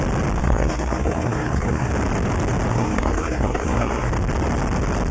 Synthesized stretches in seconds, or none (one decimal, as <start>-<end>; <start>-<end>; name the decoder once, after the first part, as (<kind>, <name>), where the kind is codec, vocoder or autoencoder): 0.4-1.9 (codec, SNAC); 2.7-4.1

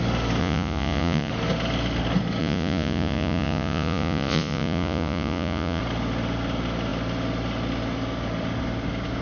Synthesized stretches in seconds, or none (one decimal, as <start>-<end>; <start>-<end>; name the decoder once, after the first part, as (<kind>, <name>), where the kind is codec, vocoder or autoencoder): 0.4-1.3 (vocoder, Vocos); 2.4-5.8

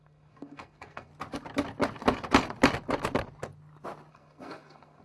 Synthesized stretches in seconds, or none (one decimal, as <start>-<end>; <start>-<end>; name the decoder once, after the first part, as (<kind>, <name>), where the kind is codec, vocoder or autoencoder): 0.0-1.1 (codec, SNAC); 4.1-5.0

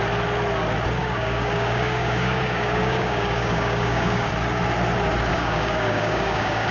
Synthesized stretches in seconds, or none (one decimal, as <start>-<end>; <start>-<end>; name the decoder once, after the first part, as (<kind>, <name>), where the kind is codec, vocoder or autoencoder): 1.0-4.3 (codec, DAC); 5.3-6.7

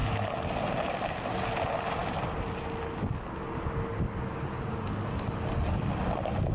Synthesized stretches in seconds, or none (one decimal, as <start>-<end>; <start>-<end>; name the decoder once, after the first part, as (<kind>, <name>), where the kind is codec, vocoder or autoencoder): none

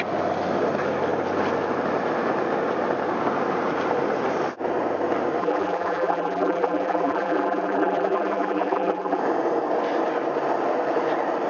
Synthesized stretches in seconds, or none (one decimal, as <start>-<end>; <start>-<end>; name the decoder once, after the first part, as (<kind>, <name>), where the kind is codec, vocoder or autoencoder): 5.4-9.2 (vocoder, BigVGAN v2)